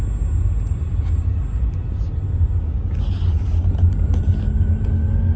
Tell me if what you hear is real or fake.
real